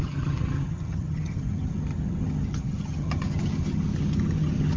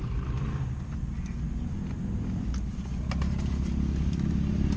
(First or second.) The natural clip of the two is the second